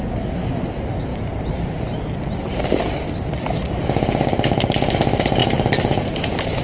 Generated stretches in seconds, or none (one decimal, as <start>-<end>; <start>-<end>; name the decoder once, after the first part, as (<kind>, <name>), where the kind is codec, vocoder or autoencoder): 1.1-2.6 (vocoder, BigVGAN v2); 5.4-6.6